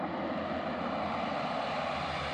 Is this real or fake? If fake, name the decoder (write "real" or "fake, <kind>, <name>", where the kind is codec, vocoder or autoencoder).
real